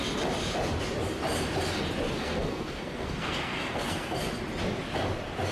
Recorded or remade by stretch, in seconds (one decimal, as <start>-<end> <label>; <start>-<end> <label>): 0.0-2.2 recorded; 2.2-4.2 remade; 4.2-5.5 recorded